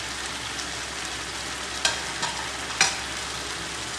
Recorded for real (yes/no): yes